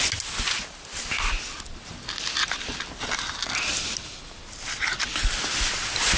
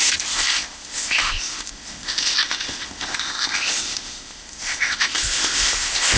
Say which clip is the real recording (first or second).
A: first